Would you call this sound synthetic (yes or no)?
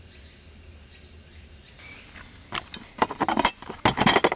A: no